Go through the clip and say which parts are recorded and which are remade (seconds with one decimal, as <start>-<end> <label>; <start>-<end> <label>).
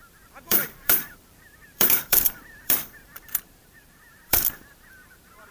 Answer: 0.0-5.5 remade